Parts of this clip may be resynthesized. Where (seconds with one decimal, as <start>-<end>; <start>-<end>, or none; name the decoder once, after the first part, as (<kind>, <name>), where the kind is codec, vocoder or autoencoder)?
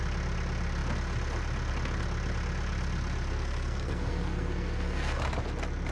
3.3-5.2 (codec, SNAC)